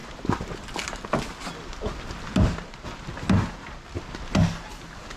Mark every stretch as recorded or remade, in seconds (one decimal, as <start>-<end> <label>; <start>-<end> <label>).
0.0-5.2 recorded